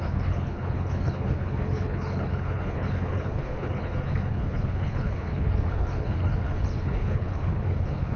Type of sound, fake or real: fake